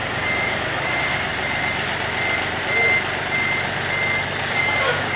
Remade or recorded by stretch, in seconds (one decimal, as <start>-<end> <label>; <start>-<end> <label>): 0.0-1.3 remade; 1.3-4.4 recorded; 4.4-5.2 remade